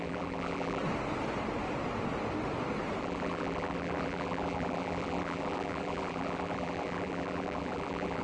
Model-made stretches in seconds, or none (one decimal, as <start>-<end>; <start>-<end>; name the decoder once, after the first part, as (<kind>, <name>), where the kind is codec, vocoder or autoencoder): 0.0-0.8 (vocoder, BigVGAN v2); 3.0-8.2